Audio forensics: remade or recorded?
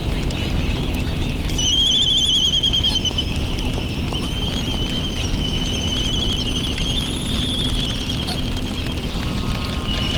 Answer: recorded